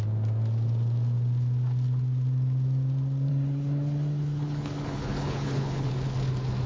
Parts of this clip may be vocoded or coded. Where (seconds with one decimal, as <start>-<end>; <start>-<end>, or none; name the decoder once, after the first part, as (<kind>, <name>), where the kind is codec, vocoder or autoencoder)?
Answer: 3.3-5.9 (codec, HILCodec)